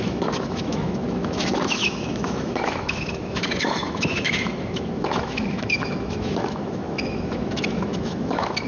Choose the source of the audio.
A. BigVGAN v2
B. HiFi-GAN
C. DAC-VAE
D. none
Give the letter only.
C